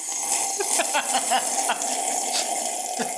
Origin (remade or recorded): recorded